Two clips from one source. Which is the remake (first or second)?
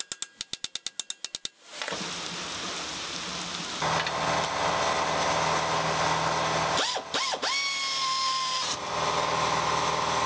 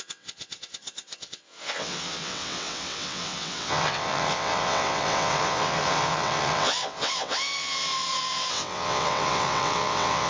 second